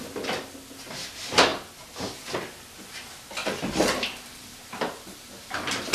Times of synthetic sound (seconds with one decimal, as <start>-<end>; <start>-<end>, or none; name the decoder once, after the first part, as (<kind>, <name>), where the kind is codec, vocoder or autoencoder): 1.5-2.1 (vocoder, BigVGAN v2); 3.4-5.5